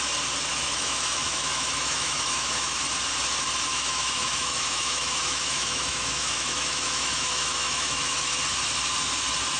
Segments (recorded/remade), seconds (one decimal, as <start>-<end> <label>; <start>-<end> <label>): 0.0-0.5 recorded; 0.5-2.8 remade; 2.8-3.7 recorded; 3.7-8.4 remade; 8.4-9.6 recorded